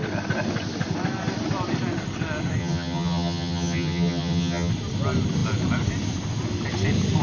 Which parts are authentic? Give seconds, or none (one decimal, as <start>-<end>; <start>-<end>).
0.0-2.6; 4.7-7.2